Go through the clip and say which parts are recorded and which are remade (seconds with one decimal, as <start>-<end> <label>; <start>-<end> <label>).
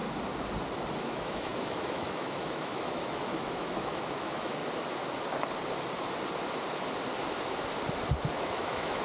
0.0-1.0 recorded; 1.0-4.6 remade; 4.6-8.3 recorded; 8.3-9.0 remade